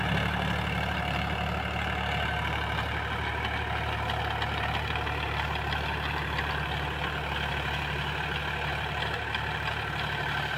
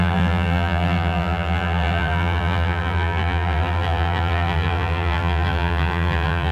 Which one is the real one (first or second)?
first